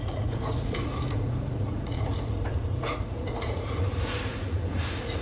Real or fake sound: fake